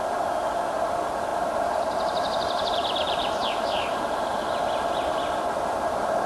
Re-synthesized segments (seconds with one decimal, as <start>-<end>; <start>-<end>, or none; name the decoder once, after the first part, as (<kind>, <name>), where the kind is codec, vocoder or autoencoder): 1.3-4.6 (vocoder, BigVGAN v2)

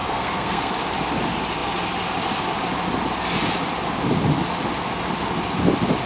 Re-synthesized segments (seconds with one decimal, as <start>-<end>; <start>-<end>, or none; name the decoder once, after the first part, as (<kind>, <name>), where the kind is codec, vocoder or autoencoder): 0.0-0.7 (codec, SNAC)